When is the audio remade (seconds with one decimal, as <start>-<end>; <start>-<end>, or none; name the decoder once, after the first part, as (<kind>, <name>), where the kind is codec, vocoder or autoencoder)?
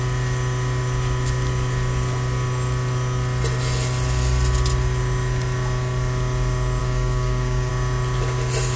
6.8-7.7 (codec, DAC)